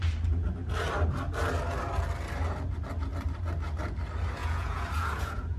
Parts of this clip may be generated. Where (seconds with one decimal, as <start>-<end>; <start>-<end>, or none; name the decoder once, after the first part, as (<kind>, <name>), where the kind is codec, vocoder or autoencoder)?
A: 4.4-5.6 (vocoder, Vocos)